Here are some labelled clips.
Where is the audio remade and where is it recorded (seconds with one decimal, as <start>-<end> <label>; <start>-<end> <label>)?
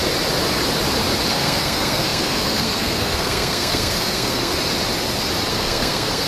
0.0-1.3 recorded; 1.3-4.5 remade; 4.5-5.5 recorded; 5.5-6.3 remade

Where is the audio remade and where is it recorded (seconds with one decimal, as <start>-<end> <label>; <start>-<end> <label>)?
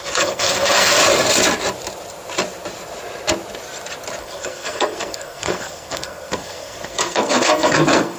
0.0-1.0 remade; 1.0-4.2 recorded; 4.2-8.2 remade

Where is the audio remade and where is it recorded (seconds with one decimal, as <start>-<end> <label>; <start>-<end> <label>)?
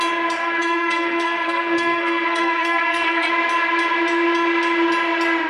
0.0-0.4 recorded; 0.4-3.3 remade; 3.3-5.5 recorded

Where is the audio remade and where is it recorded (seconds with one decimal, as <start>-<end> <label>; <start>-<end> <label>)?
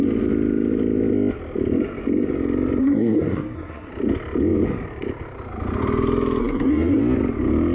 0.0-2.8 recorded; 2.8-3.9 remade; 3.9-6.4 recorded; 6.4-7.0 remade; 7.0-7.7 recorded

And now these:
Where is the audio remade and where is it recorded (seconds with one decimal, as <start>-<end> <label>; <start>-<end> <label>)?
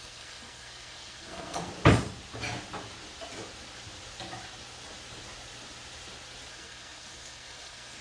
0.0-1.7 remade; 1.7-6.5 recorded; 6.5-8.0 remade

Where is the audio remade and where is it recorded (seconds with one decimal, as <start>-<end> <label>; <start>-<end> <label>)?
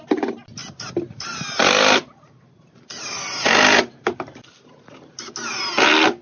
0.0-6.2 recorded